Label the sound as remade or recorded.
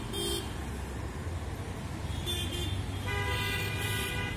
recorded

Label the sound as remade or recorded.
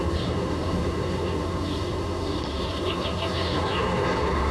remade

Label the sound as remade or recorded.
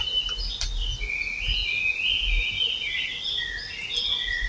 recorded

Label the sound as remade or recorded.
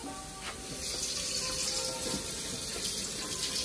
recorded